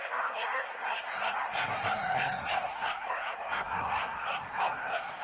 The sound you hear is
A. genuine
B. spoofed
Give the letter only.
B